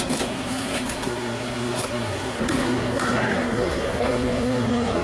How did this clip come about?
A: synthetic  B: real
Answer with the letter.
A